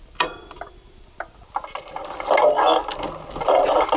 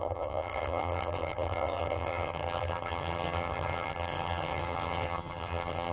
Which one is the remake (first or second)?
second